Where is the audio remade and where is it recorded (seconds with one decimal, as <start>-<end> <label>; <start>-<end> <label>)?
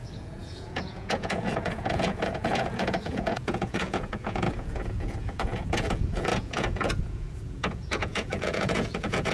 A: 0.0-9.3 remade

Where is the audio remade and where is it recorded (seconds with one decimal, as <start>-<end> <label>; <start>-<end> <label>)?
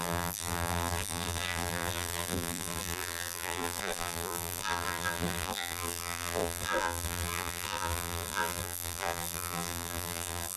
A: 0.0-10.6 remade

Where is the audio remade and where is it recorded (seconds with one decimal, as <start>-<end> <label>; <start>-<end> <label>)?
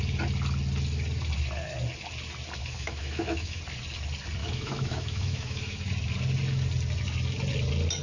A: 0.0-2.6 recorded; 2.6-3.6 remade; 3.6-4.4 recorded; 4.4-5.8 remade; 5.8-8.0 recorded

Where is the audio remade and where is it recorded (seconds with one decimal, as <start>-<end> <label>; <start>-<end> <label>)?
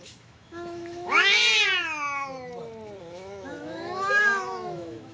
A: 0.0-1.4 remade; 1.4-3.0 recorded; 3.0-5.1 remade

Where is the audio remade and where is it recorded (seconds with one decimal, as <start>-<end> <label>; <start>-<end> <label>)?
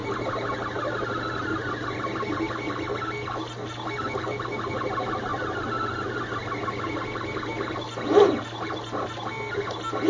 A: 0.0-10.1 recorded